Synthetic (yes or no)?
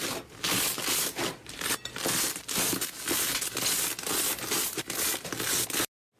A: no